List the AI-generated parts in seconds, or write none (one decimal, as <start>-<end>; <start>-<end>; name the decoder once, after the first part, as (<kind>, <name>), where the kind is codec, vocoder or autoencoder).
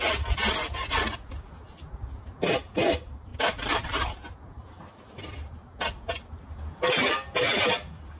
none